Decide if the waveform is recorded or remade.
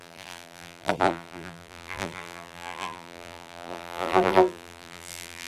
remade